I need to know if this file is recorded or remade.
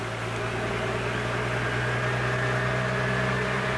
recorded